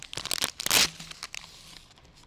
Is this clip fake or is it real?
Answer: real